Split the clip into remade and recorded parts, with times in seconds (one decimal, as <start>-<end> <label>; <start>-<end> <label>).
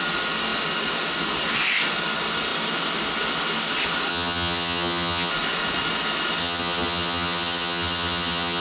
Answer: 0.0-4.1 recorded; 4.1-5.3 remade; 5.3-6.4 recorded; 6.4-8.6 remade